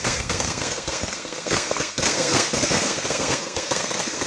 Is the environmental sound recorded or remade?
remade